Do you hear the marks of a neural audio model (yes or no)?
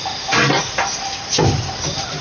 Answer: yes